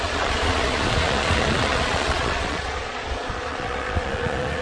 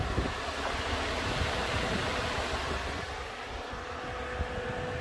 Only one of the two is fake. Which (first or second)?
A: first